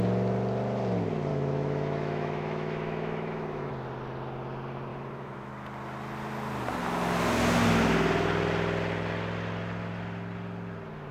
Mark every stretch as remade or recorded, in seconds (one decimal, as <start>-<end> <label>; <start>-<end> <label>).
0.0-1.3 recorded; 1.3-3.7 remade; 3.7-4.9 recorded; 4.9-5.5 remade; 5.5-11.1 recorded